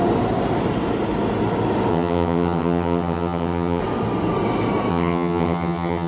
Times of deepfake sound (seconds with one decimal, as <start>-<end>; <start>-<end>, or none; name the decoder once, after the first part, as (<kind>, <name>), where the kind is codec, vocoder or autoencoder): 1.9-3.8 (vocoder, HiFi-GAN); 4.9-6.1